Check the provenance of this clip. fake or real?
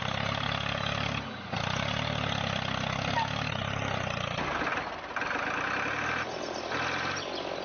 real